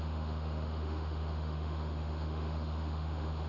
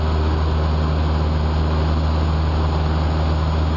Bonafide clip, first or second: second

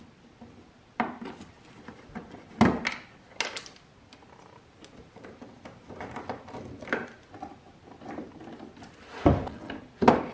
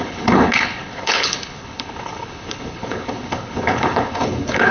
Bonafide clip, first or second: first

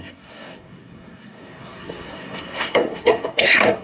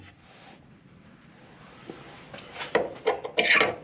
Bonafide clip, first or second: second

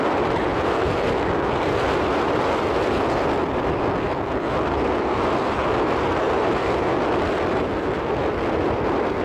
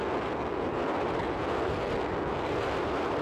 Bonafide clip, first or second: second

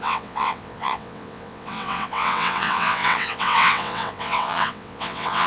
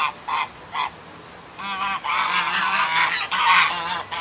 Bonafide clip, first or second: second